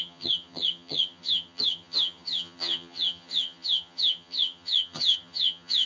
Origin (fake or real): fake